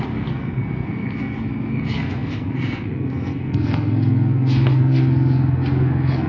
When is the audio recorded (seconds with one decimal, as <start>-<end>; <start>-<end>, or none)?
none